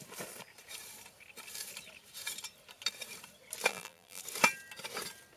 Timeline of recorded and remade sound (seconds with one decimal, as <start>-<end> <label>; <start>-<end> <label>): 0.0-3.7 recorded; 3.7-4.2 remade; 4.2-5.4 recorded